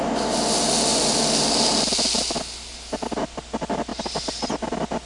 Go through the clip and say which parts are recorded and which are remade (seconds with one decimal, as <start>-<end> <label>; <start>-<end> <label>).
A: 0.0-5.1 recorded